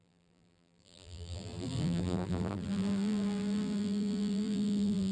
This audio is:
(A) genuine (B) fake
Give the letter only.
B